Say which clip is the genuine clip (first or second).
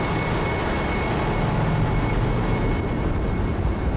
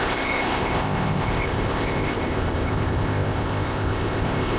first